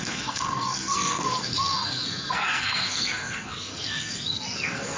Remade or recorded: remade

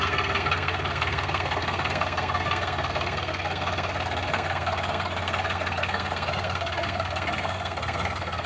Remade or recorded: remade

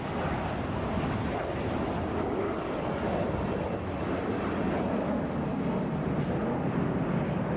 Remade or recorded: recorded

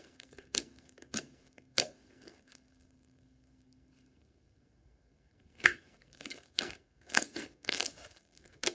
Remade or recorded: remade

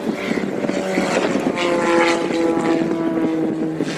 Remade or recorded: recorded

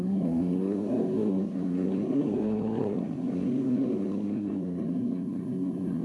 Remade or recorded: remade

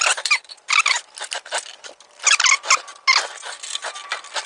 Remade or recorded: recorded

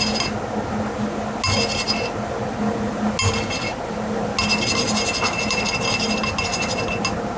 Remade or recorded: recorded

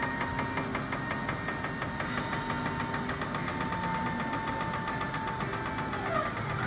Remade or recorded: recorded